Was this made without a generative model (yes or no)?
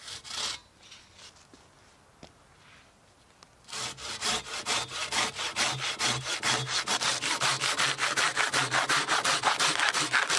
yes